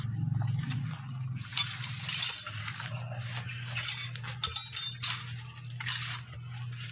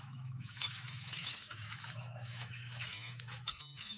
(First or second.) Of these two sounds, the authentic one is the first